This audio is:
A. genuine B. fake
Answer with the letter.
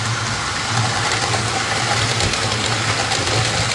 A